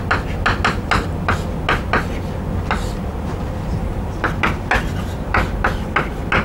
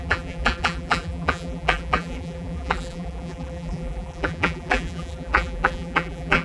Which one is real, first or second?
first